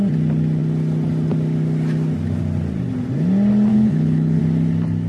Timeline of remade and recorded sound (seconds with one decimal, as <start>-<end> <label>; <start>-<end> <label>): 0.0-3.7 recorded; 3.7-4.4 remade; 4.4-5.1 recorded